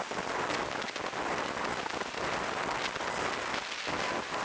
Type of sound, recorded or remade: recorded